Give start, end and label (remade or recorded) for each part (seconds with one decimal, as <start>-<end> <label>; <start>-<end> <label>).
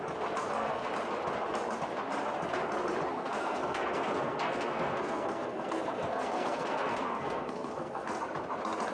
0.0-0.4 recorded; 0.4-0.9 remade; 0.9-3.1 recorded; 3.1-8.2 remade; 8.2-8.9 recorded